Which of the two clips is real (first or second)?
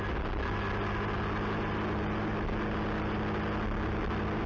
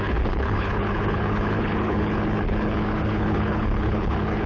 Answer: first